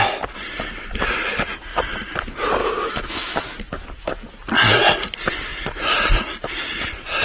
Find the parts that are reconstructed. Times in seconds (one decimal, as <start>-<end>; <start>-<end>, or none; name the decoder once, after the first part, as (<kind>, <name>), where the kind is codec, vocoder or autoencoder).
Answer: 2.6-3.4 (autoencoder, DAC-VAE)